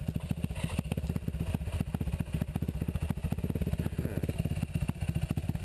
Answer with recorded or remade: recorded